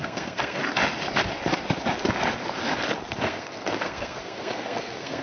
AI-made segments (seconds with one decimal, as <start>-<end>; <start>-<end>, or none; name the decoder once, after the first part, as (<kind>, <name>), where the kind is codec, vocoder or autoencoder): 0.0-0.6 (codec, SNAC); 3.2-5.2